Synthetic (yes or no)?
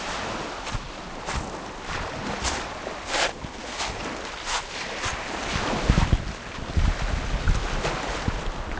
no